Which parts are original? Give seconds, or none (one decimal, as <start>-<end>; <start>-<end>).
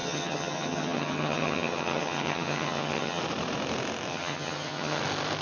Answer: 3.2-4.1; 5.0-5.4